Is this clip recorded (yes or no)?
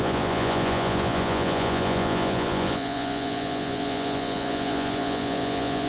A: no